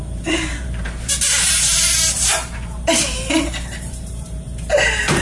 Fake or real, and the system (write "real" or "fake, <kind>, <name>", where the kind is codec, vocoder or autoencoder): fake, vocoder, BigVGAN v2